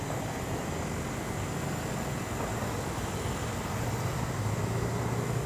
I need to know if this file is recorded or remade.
recorded